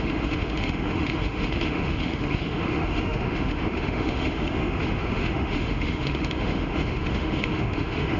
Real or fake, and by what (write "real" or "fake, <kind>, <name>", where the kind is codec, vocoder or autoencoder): fake, autoencoder, DAC-VAE